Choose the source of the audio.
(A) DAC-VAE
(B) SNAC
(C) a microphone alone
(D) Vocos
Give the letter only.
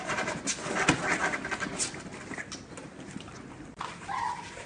C